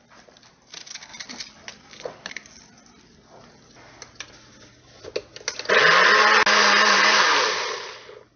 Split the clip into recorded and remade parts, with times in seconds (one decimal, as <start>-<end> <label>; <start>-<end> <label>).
0.0-8.4 recorded